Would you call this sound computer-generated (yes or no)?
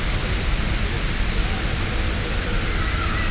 no